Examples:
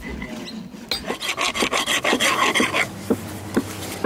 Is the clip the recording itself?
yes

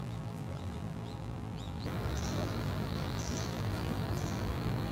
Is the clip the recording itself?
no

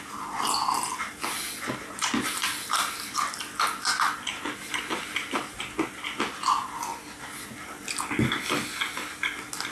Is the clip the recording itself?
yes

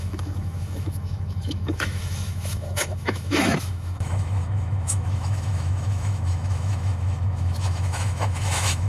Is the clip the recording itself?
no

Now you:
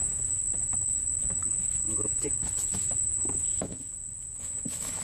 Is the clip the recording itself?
no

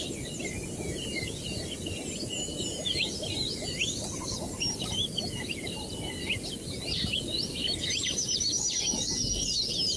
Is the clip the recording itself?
yes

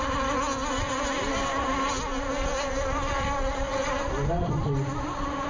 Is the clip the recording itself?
yes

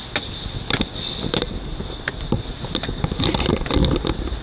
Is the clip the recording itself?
yes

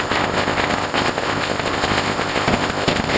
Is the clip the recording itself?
no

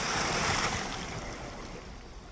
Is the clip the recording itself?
no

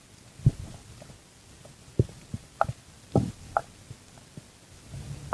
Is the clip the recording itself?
yes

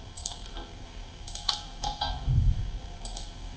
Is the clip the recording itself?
no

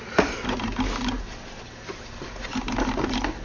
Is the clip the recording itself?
yes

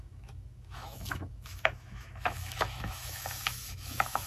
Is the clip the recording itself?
no